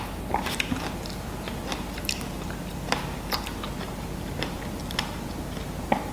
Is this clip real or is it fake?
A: real